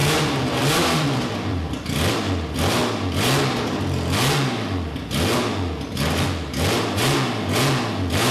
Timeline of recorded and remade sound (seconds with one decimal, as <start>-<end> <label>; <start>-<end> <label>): 0.0-2.1 remade; 2.1-8.3 recorded